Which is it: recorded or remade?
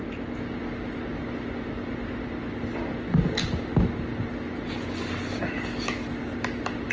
recorded